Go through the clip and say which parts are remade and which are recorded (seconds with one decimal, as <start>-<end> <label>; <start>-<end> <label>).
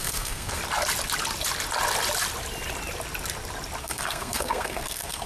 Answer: 0.0-0.6 remade; 0.6-3.8 recorded; 3.8-5.3 remade